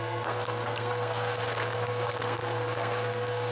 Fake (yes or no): yes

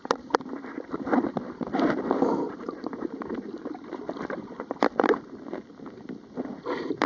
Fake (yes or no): yes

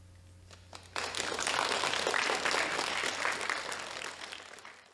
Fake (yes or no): no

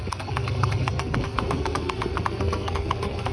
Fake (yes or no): yes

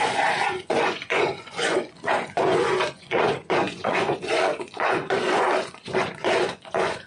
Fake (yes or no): yes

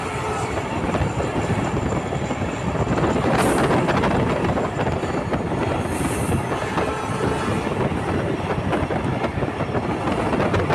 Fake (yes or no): no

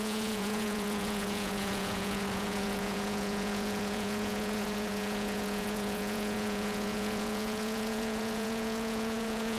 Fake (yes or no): yes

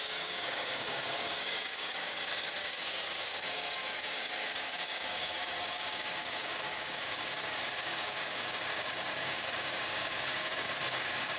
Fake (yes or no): yes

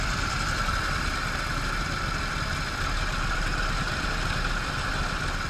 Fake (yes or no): no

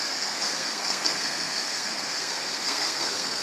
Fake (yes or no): yes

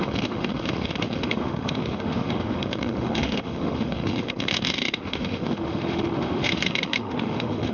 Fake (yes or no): yes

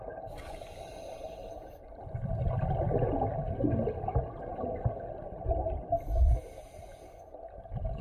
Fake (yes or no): no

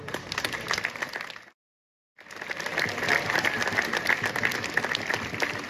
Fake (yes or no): no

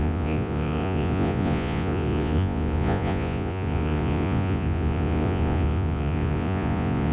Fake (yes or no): yes